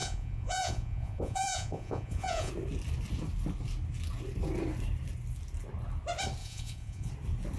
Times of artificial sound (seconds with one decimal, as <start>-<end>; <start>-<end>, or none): 0.0-2.5; 6.4-7.1